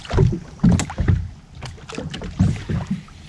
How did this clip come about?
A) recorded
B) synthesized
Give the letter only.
A